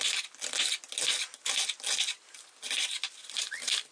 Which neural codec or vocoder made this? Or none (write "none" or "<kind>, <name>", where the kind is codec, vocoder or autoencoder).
none